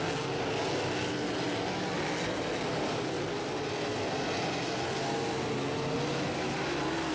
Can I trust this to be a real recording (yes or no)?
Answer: yes